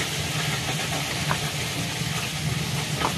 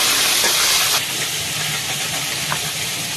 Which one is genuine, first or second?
first